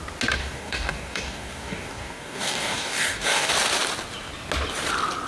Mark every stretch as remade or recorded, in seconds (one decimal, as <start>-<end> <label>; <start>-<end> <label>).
0.0-0.4 recorded; 0.4-3.5 remade; 3.5-5.3 recorded